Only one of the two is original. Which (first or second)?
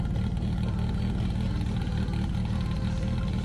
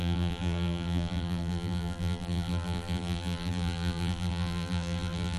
first